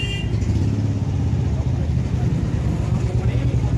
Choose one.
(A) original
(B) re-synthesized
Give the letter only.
A